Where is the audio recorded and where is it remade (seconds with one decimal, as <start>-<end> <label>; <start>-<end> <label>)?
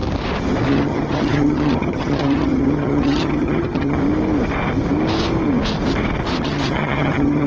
0.0-0.7 recorded; 0.7-4.0 remade; 4.0-6.4 recorded; 6.4-7.5 remade